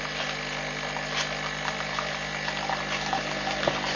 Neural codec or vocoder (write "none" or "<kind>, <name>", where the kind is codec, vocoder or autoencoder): none